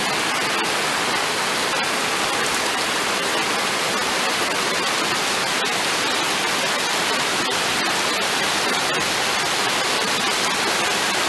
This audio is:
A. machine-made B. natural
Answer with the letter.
B